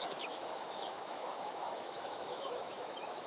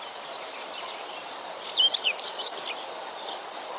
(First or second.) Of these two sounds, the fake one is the first